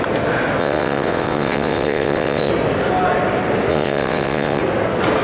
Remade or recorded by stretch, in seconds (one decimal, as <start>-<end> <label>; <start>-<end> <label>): 0.0-0.6 recorded; 0.6-2.5 remade; 2.5-3.7 recorded; 3.7-4.6 remade; 4.6-5.2 recorded